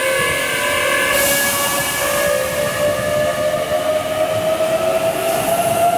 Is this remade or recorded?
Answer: recorded